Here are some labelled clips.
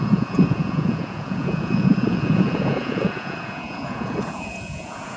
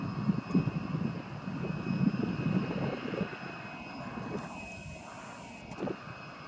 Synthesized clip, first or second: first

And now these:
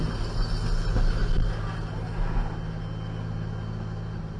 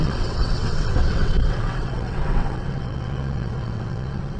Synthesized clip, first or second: second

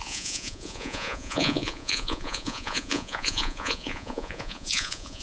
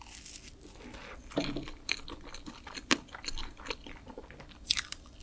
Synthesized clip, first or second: first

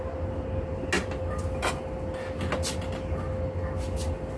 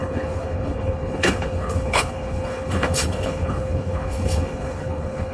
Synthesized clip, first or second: second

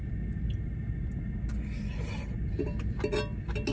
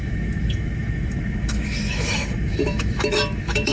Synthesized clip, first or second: second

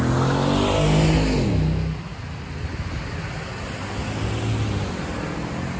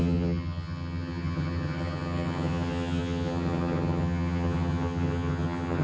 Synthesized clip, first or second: second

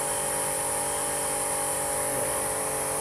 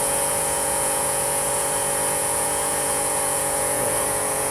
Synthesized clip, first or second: second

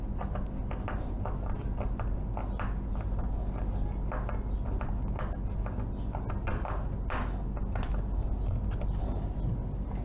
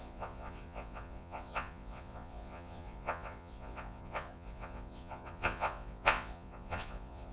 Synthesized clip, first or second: second